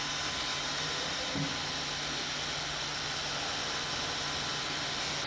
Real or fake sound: real